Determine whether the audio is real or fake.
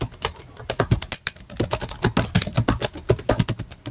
real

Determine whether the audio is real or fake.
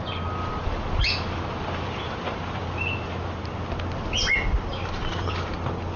real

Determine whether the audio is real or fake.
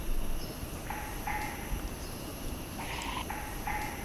real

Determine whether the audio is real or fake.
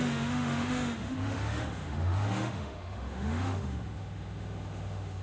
fake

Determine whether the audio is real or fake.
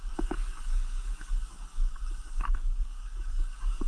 fake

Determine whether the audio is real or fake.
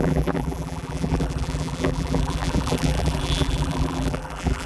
fake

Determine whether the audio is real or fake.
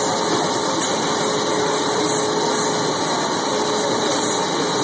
real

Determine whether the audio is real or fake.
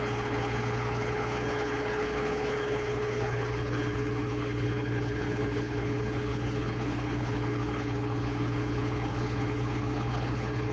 fake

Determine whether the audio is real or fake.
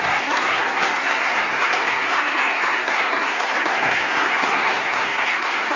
fake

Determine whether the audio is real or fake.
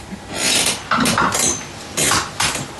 real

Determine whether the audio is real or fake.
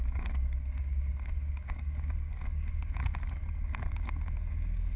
fake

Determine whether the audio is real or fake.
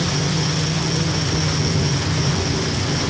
fake